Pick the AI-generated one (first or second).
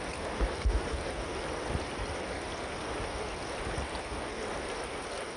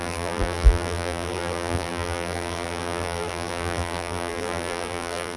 second